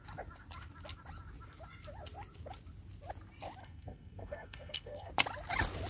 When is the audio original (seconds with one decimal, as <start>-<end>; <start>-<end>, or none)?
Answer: 0.0-3.6; 5.1-5.9